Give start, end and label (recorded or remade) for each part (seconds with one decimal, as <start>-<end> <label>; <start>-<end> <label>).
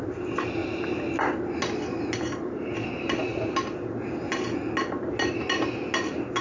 0.0-6.4 recorded